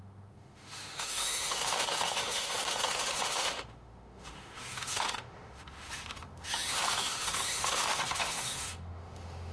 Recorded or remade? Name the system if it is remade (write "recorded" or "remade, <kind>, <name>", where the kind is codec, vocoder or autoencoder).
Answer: remade, autoencoder, DAC-VAE